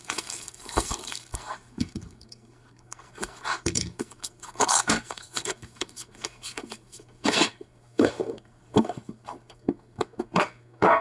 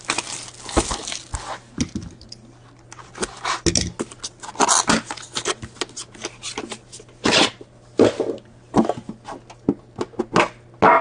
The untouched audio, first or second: second